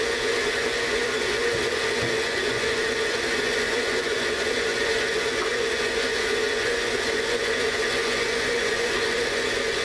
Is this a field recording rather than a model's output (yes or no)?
no